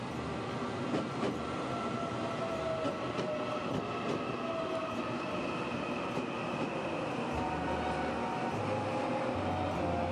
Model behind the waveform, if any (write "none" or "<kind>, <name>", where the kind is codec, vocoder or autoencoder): none